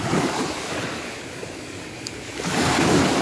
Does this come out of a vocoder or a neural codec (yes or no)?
yes